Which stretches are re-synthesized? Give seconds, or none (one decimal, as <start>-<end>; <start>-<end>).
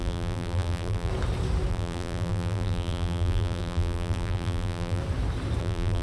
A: 0.0-1.1; 1.7-5.0; 5.6-6.0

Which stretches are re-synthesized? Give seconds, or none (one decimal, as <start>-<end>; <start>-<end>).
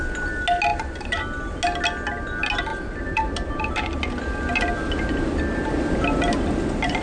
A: 0.7-1.6; 2.7-4.0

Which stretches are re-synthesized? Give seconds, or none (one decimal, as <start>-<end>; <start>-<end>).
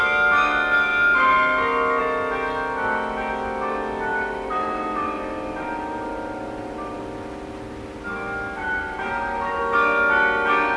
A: 4.1-7.0; 8.6-9.6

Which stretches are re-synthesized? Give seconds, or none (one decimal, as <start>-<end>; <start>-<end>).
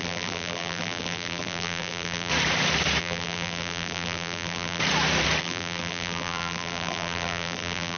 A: 0.0-2.3; 3.0-4.8; 5.4-8.0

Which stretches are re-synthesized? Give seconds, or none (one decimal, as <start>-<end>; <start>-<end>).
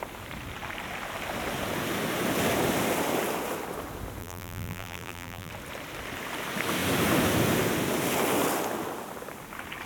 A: 4.2-5.5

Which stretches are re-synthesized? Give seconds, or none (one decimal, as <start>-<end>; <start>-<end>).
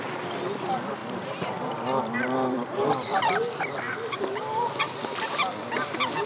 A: 1.0-3.2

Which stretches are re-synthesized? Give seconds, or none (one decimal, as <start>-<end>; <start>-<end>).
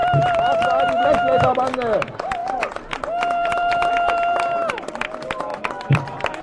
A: 2.4-3.9; 5.5-6.4